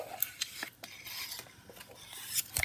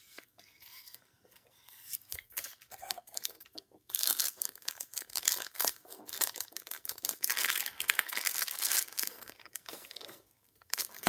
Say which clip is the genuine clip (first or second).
first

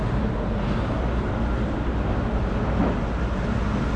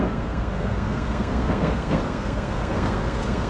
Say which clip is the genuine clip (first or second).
first